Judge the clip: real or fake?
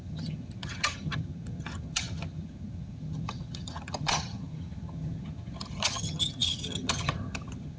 fake